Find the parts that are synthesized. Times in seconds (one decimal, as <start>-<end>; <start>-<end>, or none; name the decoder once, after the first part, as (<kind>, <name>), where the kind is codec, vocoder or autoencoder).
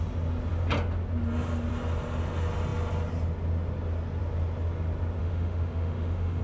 5.2-6.4 (autoencoder, DAC-VAE)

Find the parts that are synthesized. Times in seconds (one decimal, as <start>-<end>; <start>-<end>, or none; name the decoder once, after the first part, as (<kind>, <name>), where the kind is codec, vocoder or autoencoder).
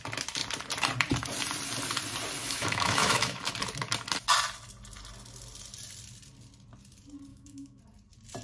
2.4-3.5 (autoencoder, DAC-VAE); 7.3-7.8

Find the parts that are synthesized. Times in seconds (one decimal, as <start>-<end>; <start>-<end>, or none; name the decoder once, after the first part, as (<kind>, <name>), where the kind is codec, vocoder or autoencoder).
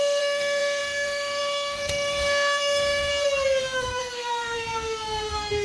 0.0-3.1 (autoencoder, DAC-VAE); 3.6-5.6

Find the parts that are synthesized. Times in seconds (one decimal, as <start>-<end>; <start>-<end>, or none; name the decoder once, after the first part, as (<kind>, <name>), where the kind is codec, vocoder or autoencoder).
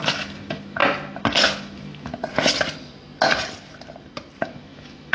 0.0-0.8 (autoencoder, DAC-VAE); 1.6-2.1; 4.4-5.1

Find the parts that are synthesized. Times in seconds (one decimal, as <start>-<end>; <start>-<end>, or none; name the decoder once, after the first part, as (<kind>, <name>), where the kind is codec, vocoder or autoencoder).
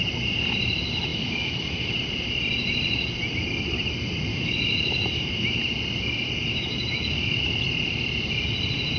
1.1-2.0 (autoencoder, DAC-VAE); 4.3-5.6; 6.5-7.4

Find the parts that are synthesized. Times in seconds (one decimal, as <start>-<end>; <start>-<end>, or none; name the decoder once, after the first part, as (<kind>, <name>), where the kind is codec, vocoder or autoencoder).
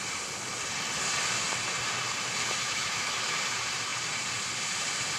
2.6-3.4 (autoencoder, DAC-VAE)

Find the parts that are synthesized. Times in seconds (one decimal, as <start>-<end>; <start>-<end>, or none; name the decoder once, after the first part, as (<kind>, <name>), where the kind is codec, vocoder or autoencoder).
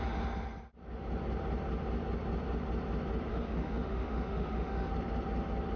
3.3-4.9 (autoencoder, DAC-VAE)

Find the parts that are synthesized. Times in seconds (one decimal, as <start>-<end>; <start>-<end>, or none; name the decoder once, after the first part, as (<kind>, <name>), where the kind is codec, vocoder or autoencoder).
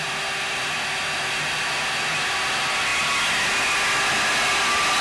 none